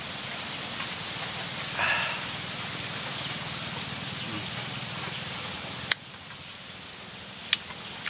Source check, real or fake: real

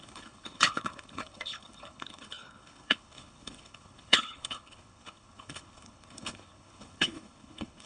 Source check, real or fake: fake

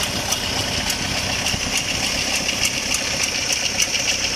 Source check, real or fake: real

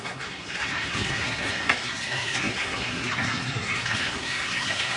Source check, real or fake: fake